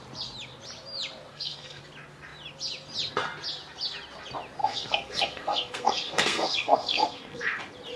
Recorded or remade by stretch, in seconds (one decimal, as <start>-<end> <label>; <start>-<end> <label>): 0.0-1.3 recorded; 1.3-1.8 remade; 1.8-4.6 recorded; 4.6-7.6 remade; 7.6-8.0 recorded